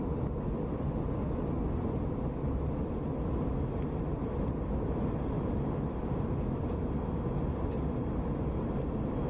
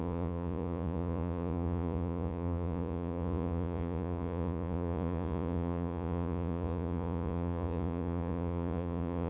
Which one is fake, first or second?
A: second